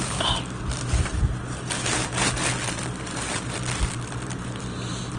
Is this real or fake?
real